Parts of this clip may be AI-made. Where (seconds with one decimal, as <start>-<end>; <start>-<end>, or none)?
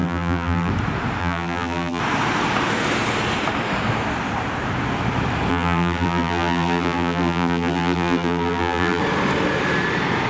0.0-0.7; 1.2-2.0; 5.5-9.0